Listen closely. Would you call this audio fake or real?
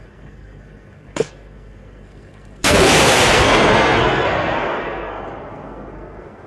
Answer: fake